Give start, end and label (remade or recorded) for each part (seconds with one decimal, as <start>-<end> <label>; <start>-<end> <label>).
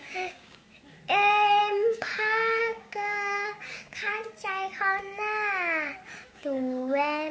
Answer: 0.0-0.6 remade; 0.6-1.6 recorded; 1.6-2.1 remade; 2.1-2.6 recorded; 2.6-4.1 remade; 4.1-6.3 recorded; 6.3-7.3 remade